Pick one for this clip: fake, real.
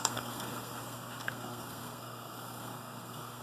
fake